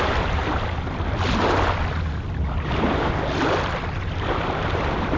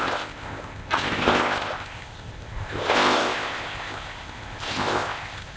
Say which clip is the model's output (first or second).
second